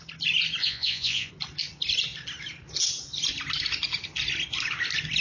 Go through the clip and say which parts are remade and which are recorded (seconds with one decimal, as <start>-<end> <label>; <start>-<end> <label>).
0.0-0.6 recorded; 0.6-1.3 remade; 1.3-5.2 recorded